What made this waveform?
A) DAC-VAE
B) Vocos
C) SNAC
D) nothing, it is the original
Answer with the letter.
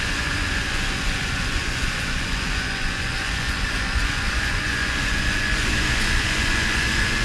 B